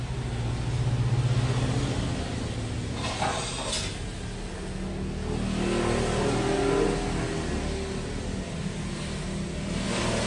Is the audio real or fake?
real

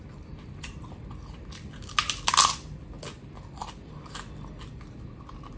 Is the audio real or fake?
real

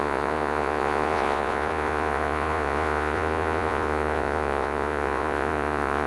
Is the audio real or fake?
fake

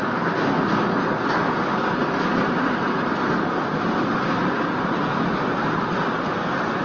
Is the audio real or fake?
real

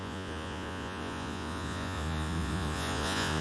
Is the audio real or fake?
fake